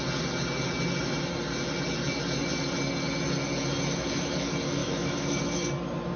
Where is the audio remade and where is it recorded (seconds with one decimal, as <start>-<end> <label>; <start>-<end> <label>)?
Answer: 0.0-4.8 recorded; 4.8-5.4 remade; 5.4-6.2 recorded